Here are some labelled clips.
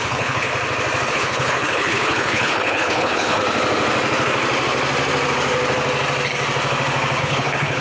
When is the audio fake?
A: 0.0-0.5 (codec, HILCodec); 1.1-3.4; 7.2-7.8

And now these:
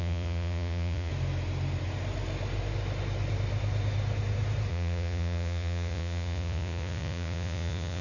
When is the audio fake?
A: 0.0-1.1 (vocoder, Vocos); 4.7-8.0

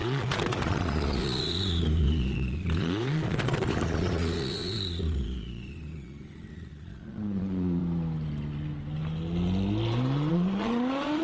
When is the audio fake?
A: 0.0-7.8 (vocoder, Vocos); 10.3-11.2